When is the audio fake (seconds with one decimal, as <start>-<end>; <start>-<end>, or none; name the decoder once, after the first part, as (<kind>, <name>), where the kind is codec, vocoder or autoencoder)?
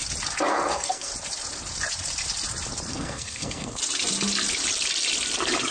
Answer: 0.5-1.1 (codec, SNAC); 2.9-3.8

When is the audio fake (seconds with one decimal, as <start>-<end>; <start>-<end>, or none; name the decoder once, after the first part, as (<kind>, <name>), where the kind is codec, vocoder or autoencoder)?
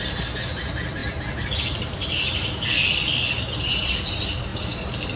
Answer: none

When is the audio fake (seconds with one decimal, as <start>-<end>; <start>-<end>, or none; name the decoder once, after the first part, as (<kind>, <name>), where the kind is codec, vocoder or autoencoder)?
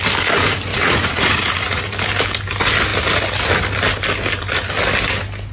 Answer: 0.7-1.8 (vocoder, Vocos)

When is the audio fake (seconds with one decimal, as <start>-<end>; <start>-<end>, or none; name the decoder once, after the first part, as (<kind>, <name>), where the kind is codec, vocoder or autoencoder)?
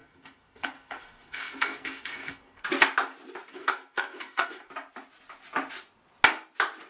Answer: 0.0-2.7 (codec, SNAC); 3.5-4.7